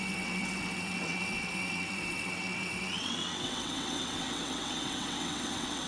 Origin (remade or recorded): remade